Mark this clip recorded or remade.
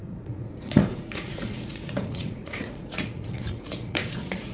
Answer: remade